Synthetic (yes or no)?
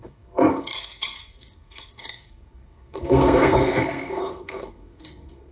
yes